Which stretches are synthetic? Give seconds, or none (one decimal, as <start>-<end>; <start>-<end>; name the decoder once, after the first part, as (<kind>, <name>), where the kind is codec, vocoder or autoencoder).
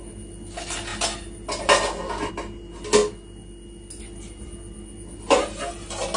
none